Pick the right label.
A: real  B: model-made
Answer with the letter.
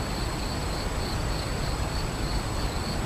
B